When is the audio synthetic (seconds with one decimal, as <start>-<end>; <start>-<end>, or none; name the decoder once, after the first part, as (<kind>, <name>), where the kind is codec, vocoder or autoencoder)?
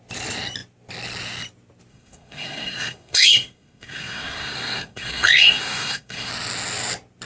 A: 1.9-6.3 (codec, SNAC)